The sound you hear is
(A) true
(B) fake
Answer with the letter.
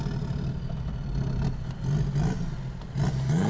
A